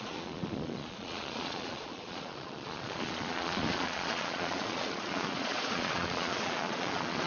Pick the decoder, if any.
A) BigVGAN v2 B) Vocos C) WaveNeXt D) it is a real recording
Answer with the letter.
B